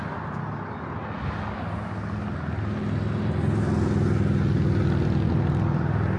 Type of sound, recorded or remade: recorded